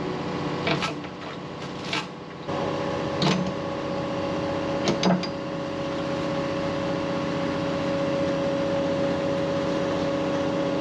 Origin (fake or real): real